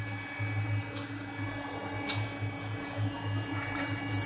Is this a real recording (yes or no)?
yes